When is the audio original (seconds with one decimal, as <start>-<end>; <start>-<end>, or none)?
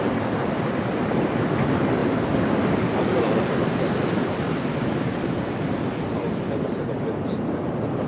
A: 0.0-8.1